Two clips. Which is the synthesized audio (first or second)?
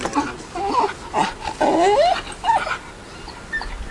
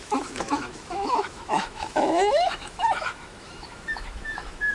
second